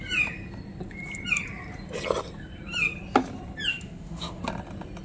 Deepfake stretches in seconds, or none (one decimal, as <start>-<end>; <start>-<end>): 3.7-4.4